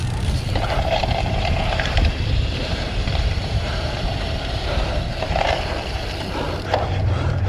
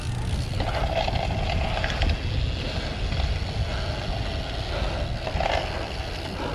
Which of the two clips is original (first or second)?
second